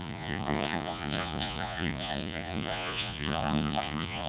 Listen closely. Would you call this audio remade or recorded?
remade